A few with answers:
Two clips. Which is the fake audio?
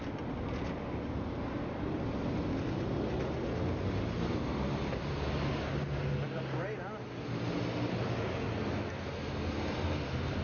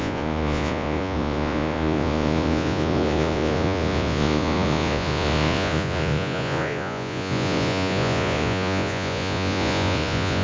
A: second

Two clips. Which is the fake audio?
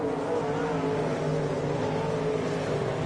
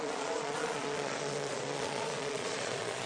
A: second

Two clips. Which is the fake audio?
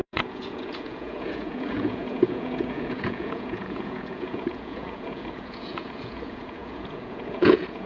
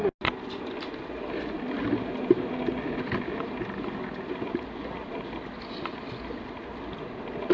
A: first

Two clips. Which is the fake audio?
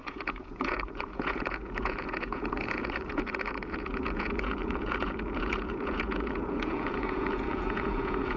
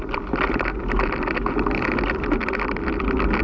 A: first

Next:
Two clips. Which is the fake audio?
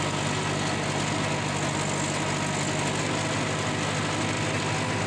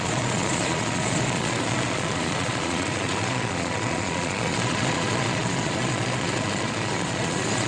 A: second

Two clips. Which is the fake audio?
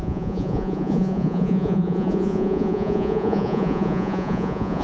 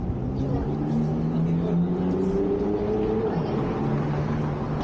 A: first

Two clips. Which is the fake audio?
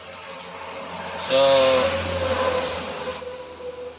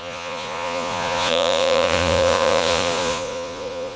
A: second